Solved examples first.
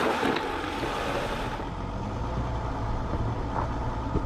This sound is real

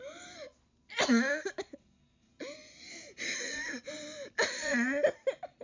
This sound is real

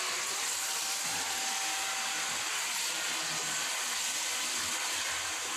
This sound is fake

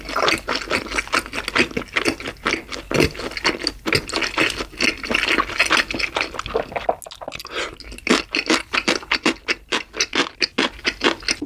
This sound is real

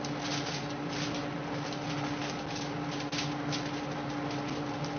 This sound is real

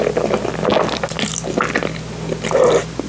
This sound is real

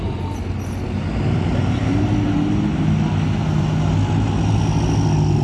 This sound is real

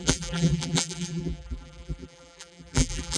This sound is fake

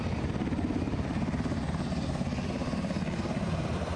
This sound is real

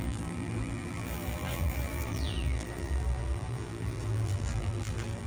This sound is fake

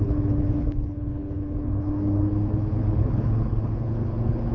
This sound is fake